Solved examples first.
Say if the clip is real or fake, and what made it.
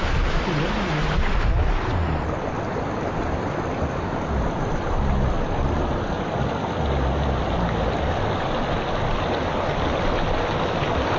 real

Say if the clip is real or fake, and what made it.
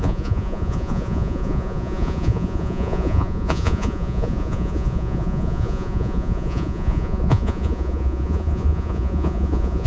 fake, vocoder, Vocos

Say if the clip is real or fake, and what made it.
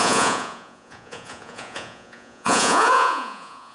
fake, vocoder, Vocos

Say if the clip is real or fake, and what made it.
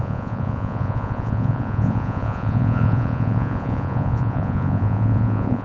fake, vocoder, Vocos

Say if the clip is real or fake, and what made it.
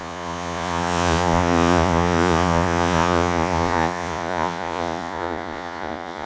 fake, vocoder, Vocos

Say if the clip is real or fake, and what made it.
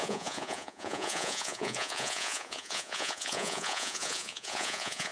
fake, vocoder, Vocos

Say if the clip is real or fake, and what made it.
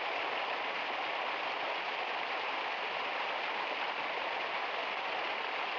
real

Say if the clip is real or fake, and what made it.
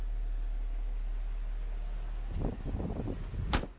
real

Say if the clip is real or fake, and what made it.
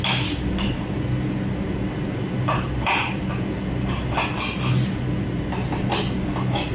real